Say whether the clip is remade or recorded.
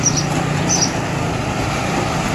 recorded